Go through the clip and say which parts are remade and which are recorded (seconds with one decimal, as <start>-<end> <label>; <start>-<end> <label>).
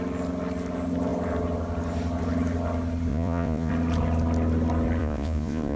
0.0-3.1 recorded; 3.1-3.7 remade; 3.7-5.0 recorded; 5.0-5.8 remade